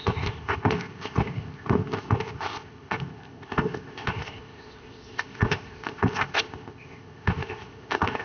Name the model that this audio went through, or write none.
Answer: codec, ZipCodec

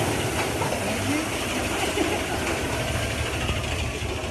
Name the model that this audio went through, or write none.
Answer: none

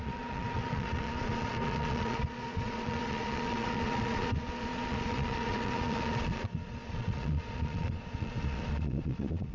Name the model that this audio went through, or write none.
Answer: vocoder, Vocos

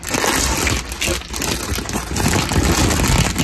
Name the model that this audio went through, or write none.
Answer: none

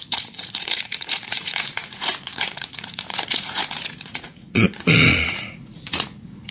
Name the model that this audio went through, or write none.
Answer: vocoder, Vocos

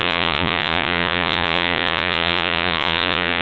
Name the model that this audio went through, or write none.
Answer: vocoder, Vocos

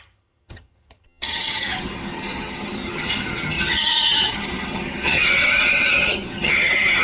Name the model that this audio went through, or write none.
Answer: vocoder, HiFi-GAN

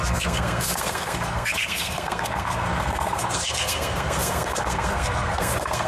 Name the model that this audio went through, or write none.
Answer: codec, SNAC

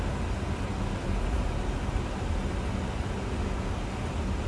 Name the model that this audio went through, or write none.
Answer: none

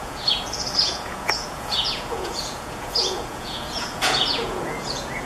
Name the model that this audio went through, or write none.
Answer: vocoder, Vocos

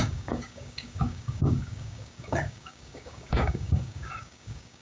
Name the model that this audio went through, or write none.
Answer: codec, DAC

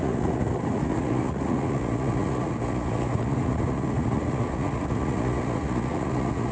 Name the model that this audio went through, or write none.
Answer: vocoder, Vocos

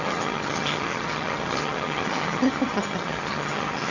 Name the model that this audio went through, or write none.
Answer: vocoder, HiFi-GAN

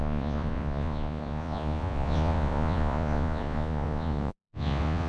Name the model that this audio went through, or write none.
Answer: vocoder, Vocos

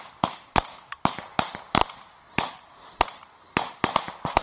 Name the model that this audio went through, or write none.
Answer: none